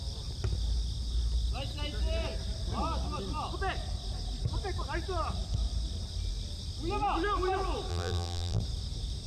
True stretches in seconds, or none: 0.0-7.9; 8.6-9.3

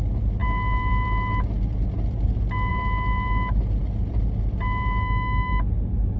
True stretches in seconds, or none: 0.0-6.2

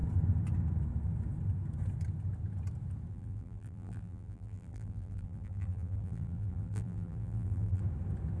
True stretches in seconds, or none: 0.0-3.1; 7.8-8.4

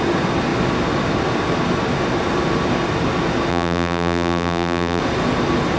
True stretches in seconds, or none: 0.0-3.5; 5.0-5.8

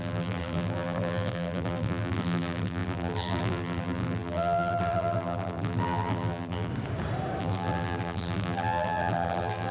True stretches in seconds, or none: 6.7-7.4

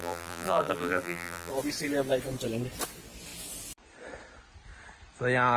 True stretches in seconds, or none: 1.5-5.6

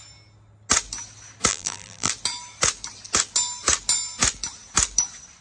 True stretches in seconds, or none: 0.0-1.5; 2.1-5.4